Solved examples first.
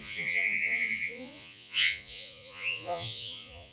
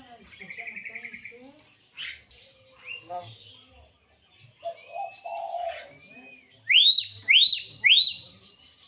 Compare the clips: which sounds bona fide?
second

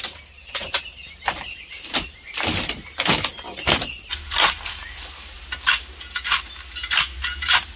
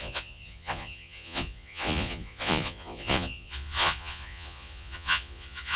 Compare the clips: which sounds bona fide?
first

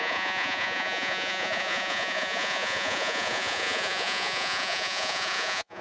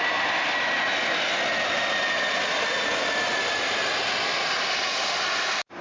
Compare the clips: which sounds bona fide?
second